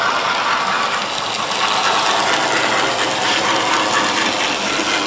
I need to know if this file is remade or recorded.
recorded